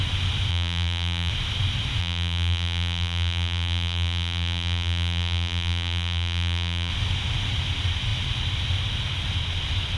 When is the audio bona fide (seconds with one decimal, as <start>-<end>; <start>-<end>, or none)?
0.0-0.5; 1.3-2.0; 6.9-10.0